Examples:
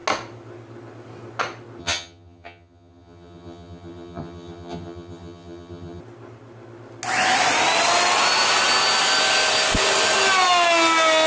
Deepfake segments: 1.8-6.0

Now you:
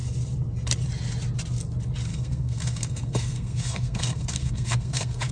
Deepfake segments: 2.1-5.3

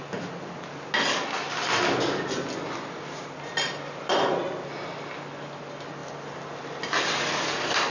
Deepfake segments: none

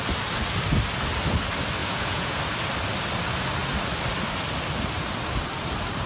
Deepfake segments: 1.8-2.4

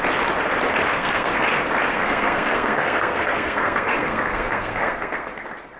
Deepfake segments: 0.8-1.4; 1.9-5.3

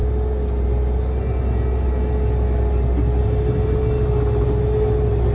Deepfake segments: none

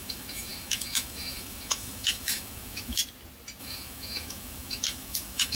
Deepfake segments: 0.0-3.0; 3.6-5.5